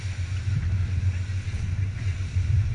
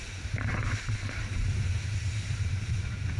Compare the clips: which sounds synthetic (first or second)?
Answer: second